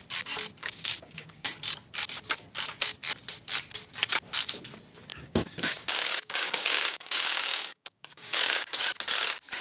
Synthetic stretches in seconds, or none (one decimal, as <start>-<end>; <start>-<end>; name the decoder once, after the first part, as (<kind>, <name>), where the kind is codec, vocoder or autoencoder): 0.6-1.5 (codec, DAC); 5.1-8.8